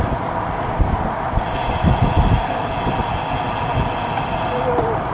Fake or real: real